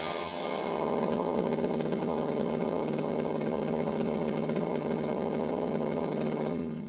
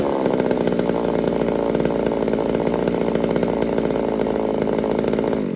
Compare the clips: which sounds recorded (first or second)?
second